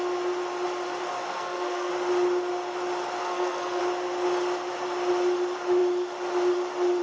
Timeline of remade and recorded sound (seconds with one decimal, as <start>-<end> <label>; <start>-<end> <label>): 0.0-1.3 recorded; 1.3-1.9 remade; 1.9-3.2 recorded; 3.2-3.8 remade; 3.8-7.0 recorded